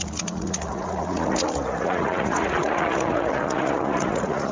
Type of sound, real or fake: fake